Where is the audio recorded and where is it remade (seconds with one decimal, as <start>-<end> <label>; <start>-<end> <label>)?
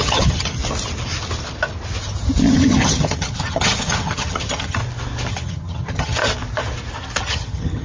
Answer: 0.0-0.6 remade; 0.6-2.5 recorded; 2.5-4.8 remade; 4.8-5.3 recorded; 5.3-6.2 remade; 6.2-7.2 recorded; 7.2-7.8 remade